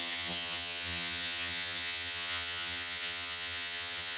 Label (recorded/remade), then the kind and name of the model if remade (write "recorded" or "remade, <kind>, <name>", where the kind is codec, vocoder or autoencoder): remade, vocoder, HiFi-GAN